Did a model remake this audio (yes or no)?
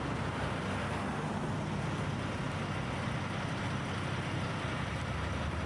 no